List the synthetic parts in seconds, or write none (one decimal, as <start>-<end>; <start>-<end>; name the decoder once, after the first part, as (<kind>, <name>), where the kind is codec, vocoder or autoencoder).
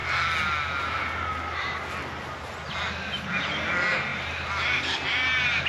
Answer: none